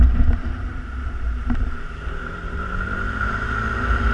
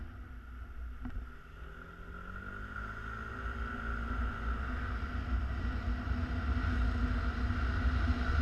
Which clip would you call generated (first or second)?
first